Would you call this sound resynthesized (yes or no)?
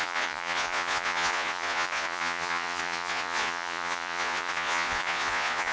yes